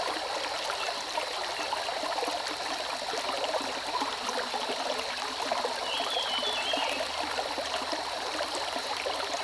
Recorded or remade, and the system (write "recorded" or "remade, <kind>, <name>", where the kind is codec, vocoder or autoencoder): recorded